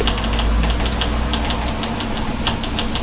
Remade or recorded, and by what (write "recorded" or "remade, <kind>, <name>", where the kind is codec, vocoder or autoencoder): recorded